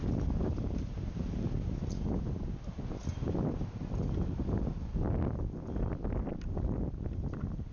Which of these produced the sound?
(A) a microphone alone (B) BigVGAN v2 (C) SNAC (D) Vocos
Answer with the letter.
A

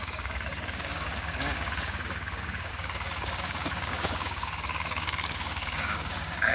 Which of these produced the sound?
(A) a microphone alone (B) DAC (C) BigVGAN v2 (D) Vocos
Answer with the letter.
B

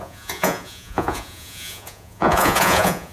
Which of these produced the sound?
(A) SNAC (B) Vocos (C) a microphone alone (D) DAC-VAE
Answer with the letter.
B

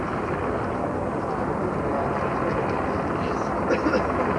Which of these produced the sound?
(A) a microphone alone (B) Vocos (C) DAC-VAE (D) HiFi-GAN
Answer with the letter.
A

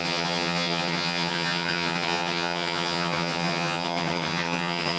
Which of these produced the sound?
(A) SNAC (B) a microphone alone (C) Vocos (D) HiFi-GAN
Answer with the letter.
D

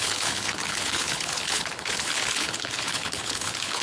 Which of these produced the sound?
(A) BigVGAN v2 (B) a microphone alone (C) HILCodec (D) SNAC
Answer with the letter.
C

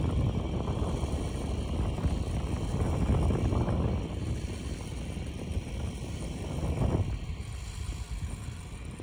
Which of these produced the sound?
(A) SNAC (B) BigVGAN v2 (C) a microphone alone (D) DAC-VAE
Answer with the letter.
C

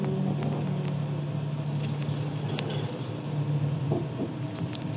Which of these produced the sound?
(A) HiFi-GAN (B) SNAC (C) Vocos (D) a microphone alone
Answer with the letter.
D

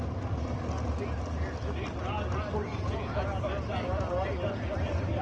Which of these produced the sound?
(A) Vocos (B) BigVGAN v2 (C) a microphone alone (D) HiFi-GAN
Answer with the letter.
C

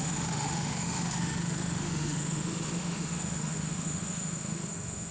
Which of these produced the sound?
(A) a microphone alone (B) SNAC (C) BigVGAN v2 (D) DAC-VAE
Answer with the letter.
D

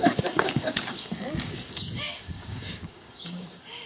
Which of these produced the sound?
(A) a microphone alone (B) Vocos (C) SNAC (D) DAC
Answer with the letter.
D